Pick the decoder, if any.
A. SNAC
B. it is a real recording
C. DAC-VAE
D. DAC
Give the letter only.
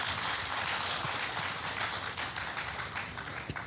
B